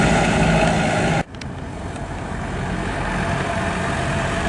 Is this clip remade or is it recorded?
recorded